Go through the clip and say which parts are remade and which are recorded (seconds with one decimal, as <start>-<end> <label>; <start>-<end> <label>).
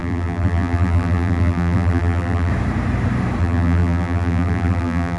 0.0-2.5 remade; 2.5-3.4 recorded; 3.4-5.2 remade